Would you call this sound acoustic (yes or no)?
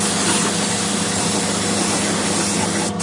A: yes